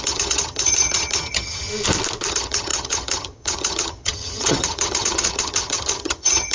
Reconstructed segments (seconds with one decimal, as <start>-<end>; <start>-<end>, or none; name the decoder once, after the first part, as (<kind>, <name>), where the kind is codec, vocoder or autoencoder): 0.0-1.7 (vocoder, HiFi-GAN); 2.3-6.5